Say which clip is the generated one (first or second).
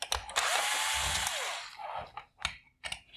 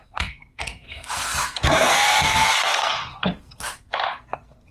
second